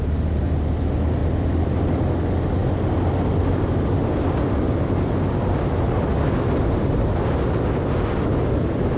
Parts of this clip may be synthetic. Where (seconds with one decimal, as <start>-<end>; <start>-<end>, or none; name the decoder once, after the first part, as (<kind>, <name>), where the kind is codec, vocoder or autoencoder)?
1.2-2.0 (vocoder, BigVGAN v2); 4.0-7.0